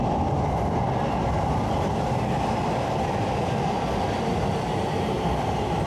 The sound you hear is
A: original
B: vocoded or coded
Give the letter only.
A